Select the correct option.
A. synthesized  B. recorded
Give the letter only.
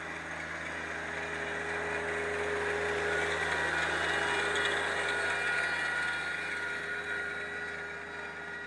B